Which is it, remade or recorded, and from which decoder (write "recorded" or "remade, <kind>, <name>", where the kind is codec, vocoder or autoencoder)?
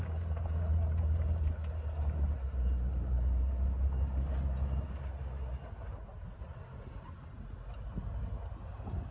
recorded